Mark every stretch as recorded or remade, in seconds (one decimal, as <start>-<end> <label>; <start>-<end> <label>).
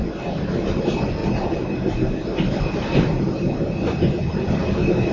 0.0-5.1 recorded